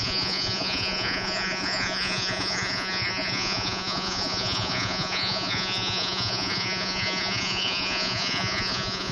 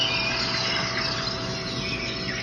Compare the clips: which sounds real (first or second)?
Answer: second